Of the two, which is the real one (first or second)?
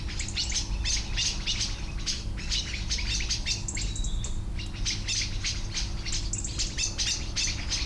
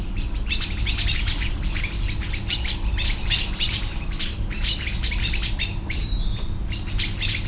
first